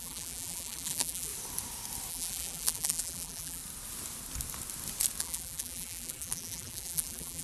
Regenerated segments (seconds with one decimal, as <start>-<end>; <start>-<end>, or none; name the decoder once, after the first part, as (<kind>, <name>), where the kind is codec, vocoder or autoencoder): 0.0-1.3 (vocoder, BigVGAN v2); 2.1-3.6; 5.2-7.4